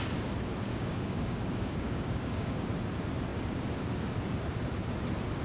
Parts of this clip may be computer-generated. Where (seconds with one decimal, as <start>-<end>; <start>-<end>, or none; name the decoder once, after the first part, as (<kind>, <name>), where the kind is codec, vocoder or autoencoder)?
0.7-2.7 (codec, DAC)

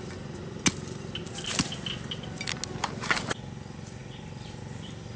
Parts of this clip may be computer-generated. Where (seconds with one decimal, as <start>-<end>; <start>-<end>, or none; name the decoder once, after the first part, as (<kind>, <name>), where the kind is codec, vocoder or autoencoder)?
none

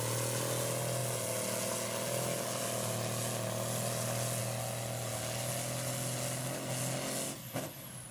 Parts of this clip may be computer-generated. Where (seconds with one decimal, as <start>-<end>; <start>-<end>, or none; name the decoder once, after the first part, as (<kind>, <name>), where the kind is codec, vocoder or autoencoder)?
none

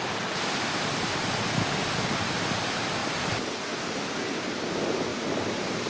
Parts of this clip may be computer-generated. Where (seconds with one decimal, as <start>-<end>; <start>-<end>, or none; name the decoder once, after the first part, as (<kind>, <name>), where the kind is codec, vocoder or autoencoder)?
none

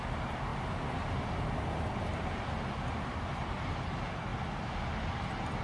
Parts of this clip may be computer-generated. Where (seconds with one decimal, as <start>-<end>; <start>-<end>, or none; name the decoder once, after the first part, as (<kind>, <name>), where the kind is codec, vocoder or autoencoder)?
none

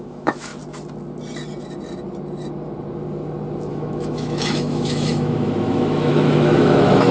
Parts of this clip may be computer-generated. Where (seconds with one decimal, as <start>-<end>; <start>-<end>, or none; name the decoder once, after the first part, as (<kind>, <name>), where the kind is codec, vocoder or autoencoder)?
0.0-0.5 (autoencoder, DAC-VAE); 3.7-7.1

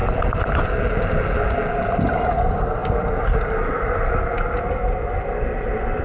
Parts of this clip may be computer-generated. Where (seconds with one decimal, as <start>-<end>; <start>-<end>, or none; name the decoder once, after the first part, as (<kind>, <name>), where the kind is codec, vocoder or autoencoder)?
none